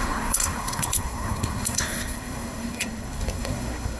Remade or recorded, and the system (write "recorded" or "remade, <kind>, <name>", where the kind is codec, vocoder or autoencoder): remade, codec, SNAC